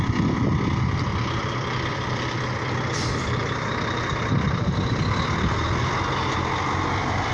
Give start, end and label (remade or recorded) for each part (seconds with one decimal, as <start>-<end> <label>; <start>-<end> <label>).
0.0-1.1 recorded; 1.1-5.5 remade; 5.5-7.3 recorded